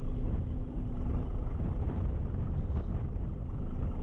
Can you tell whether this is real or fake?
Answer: real